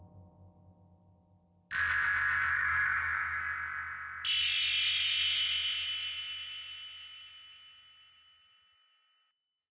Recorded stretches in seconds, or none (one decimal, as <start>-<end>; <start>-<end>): 0.0-2.5; 3.4-9.7